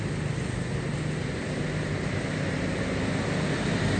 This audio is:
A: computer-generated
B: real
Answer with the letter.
B